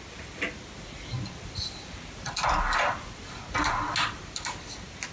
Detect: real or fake real